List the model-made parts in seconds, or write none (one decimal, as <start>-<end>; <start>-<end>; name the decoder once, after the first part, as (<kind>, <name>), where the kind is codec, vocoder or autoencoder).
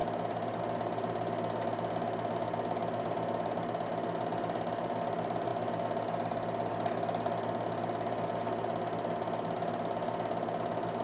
none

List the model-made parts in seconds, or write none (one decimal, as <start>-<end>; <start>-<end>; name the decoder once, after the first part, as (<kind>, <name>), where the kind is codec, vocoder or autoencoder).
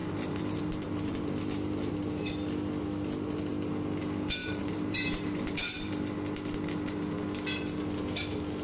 0.0-1.9 (vocoder, BigVGAN v2); 4.4-5.9